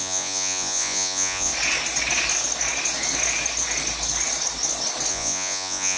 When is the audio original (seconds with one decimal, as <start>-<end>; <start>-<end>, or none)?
1.5-5.1